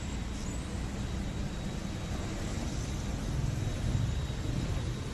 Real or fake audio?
real